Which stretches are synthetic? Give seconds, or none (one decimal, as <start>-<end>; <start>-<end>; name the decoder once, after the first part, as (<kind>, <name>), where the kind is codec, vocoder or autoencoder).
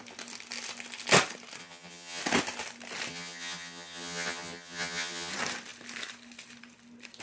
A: 1.6-2.2 (vocoder, HiFi-GAN); 3.1-5.3